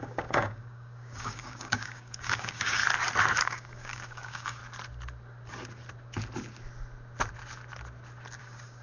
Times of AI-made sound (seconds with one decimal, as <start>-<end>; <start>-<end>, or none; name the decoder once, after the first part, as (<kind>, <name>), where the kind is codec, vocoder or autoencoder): 0.0-2.8 (codec, DAC); 3.4-4.6; 8.4-8.8

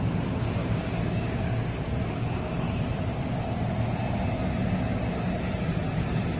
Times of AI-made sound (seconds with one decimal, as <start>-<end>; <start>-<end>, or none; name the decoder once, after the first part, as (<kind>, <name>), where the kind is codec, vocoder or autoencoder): 0.6-2.8 (codec, DAC)